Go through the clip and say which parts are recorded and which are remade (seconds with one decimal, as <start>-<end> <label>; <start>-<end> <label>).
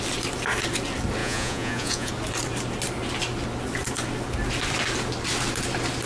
0.0-1.2 recorded; 1.2-2.1 remade; 2.1-6.1 recorded